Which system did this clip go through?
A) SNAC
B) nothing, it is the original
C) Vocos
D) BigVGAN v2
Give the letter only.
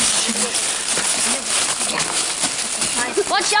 B